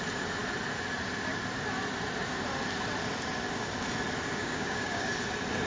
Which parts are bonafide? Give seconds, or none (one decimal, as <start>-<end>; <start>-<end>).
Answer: 0.0-4.4; 5.1-5.7